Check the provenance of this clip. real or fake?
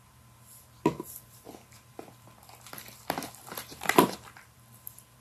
fake